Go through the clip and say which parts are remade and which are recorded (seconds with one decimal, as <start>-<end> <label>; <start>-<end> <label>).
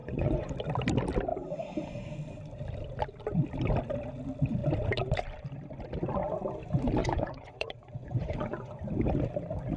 0.0-0.5 remade; 0.5-7.0 recorded; 7.0-8.7 remade; 8.7-9.8 recorded